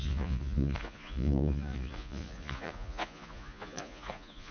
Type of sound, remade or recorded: remade